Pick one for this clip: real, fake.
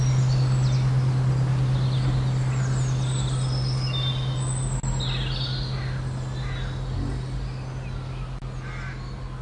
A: real